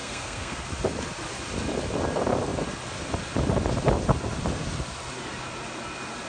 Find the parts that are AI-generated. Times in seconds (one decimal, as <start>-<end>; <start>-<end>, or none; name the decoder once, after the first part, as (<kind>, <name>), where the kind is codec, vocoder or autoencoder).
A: 0.0-0.6 (codec, SNAC)